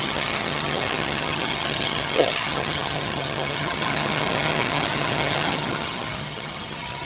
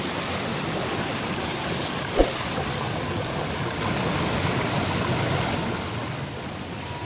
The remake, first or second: first